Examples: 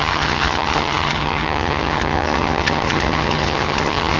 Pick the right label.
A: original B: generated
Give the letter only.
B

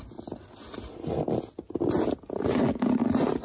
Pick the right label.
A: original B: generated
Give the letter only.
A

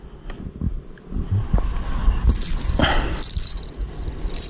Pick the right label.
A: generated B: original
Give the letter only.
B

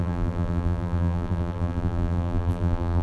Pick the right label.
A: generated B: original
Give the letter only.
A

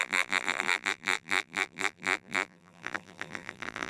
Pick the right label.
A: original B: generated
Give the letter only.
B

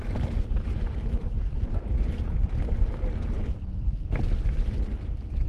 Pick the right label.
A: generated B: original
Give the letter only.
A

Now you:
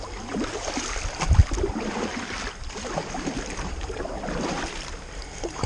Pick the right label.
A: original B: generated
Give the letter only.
A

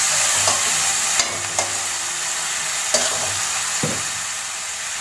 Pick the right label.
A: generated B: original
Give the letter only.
B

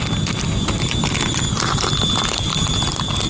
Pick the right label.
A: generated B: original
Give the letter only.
A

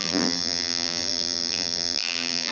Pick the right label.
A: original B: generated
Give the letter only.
B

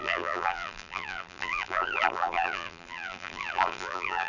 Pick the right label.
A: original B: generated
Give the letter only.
B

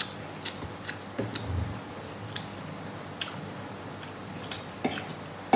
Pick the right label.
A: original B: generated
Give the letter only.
A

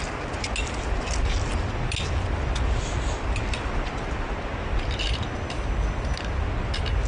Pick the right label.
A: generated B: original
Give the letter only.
B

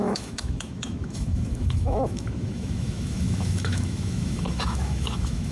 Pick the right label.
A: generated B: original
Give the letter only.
A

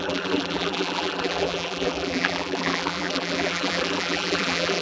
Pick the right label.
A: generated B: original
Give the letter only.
A